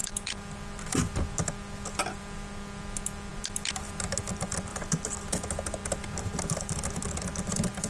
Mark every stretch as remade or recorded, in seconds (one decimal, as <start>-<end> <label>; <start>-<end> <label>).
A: 0.0-2.2 remade; 2.2-3.3 recorded; 3.3-4.1 remade; 4.1-4.7 recorded; 4.7-5.3 remade; 5.3-5.8 recorded; 5.8-7.5 remade; 7.5-7.9 recorded

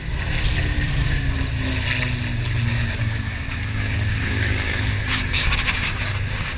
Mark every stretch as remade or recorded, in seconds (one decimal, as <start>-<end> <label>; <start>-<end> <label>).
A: 0.0-2.7 recorded; 2.7-6.6 remade

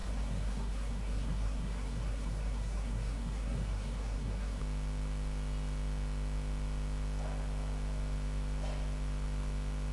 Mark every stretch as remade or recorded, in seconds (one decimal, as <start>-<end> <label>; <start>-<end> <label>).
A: 0.0-4.6 remade; 4.6-9.9 recorded

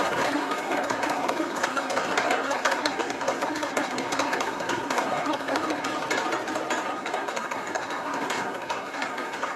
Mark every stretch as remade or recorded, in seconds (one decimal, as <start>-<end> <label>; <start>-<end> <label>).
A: 0.0-5.9 remade; 5.9-6.9 recorded; 6.9-9.6 remade

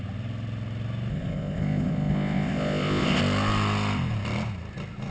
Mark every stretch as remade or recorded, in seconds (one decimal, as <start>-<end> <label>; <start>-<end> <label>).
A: 0.0-1.1 recorded; 1.1-3.2 remade; 3.2-5.1 recorded